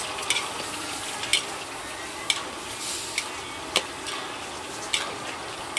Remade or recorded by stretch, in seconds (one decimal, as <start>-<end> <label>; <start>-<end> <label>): 0.0-5.8 recorded